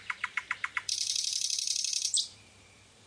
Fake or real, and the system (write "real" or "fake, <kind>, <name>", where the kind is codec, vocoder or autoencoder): fake, vocoder, BigVGAN v2